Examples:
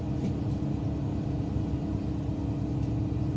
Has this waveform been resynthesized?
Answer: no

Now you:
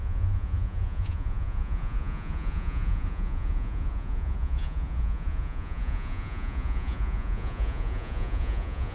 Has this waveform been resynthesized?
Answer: yes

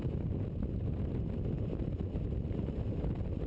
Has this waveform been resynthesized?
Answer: yes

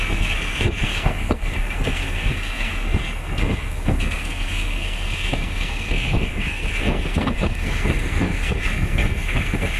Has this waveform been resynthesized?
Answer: yes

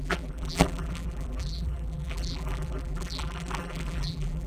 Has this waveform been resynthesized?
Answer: yes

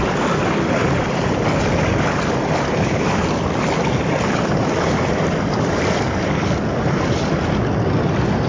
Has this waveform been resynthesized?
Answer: no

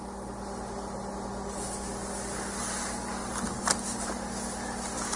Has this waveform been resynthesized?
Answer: no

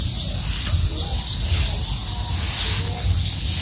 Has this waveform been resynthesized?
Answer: no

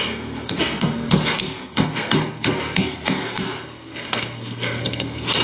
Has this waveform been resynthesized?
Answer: yes